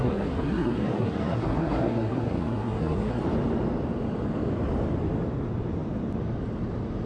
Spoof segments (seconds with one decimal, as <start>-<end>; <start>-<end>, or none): 0.0-3.2